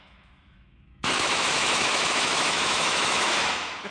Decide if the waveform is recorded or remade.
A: remade